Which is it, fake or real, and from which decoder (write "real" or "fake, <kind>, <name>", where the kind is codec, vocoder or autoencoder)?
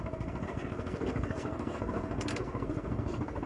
fake, codec, SNAC